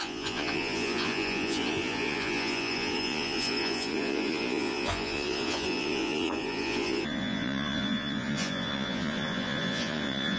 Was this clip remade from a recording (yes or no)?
yes